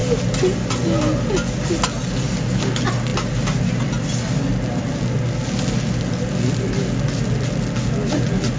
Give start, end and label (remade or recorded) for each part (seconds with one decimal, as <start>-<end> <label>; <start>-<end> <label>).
0.0-8.6 recorded